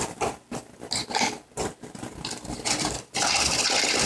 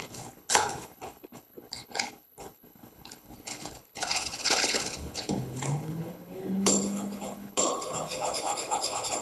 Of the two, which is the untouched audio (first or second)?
first